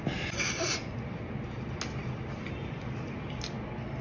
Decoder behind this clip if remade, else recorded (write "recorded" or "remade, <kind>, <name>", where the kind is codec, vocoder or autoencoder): recorded